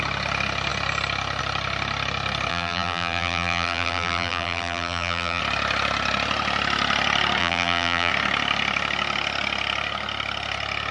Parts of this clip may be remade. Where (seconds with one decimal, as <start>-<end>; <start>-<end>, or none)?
2.5-5.4; 7.4-8.1